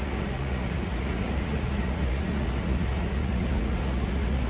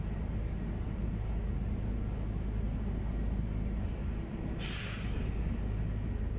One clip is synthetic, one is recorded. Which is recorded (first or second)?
second